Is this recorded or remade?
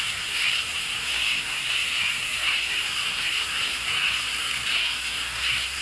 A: remade